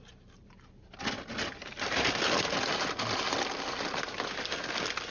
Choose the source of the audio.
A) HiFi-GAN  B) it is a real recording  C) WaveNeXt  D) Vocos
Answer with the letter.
B